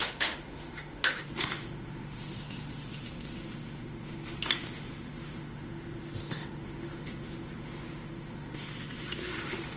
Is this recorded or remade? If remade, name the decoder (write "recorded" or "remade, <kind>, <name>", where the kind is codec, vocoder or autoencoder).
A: remade, autoencoder, DAC-VAE